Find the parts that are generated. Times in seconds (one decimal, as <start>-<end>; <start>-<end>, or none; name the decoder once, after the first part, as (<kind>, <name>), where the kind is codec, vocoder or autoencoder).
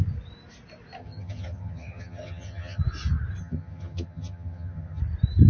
1.0-2.8 (vocoder, HiFi-GAN); 3.4-5.0